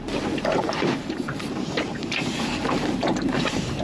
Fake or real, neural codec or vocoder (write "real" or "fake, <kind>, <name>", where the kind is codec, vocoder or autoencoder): fake, vocoder, BigVGAN v2